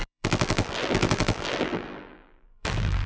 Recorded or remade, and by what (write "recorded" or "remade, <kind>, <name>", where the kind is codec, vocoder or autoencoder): remade, vocoder, BigVGAN v2